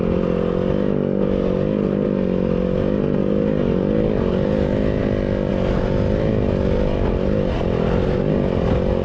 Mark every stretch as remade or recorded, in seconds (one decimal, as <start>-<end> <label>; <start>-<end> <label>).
0.0-9.0 recorded